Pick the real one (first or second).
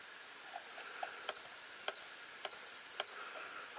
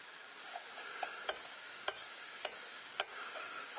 first